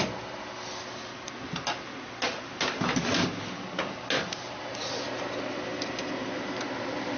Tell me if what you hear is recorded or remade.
recorded